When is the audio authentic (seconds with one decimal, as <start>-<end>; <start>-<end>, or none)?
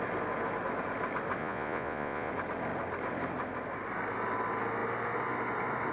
0.0-1.4; 2.3-5.9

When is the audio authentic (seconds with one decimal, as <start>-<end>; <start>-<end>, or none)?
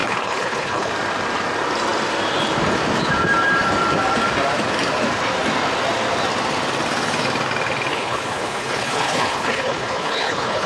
0.9-7.9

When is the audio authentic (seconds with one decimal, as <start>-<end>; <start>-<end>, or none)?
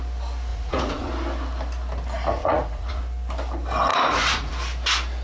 0.0-0.5; 1.1-2.4; 3.0-3.9; 4.5-5.2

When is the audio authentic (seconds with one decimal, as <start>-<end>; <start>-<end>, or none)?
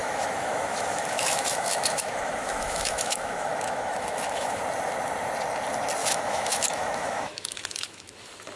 4.6-6.0; 8.1-8.6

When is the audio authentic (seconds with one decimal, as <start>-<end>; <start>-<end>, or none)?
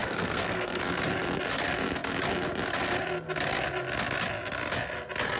0.8-5.4